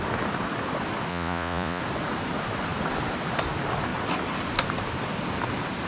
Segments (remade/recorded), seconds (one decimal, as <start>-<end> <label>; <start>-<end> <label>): 0.0-1.1 recorded; 1.1-1.8 remade; 1.8-5.9 recorded